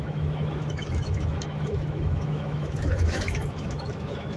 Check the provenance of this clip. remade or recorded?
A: remade